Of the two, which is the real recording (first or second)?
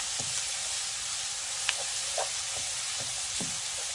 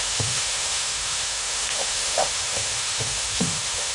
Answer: first